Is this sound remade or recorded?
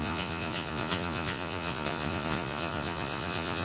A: remade